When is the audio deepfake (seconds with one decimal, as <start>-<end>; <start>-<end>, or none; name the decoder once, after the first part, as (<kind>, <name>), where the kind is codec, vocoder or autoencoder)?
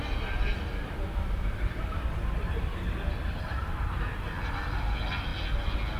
0.5-4.0 (vocoder, BigVGAN v2)